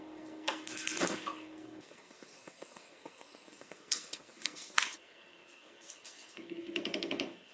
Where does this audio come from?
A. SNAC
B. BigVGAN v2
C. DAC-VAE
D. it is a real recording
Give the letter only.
A